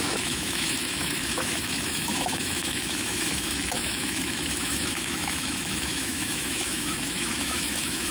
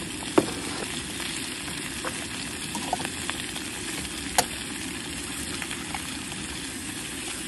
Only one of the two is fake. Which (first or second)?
first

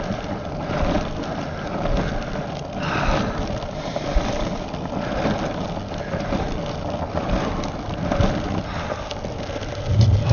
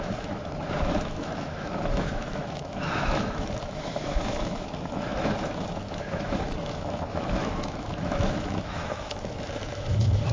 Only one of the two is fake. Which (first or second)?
second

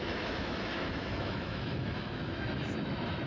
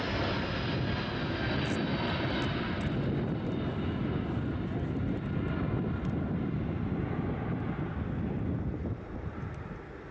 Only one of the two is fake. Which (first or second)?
first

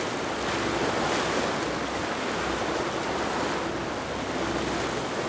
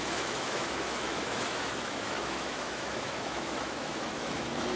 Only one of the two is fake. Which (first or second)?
second